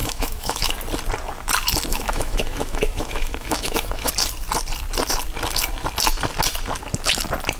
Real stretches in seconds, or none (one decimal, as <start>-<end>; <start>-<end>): 0.7-1.9; 4.1-7.6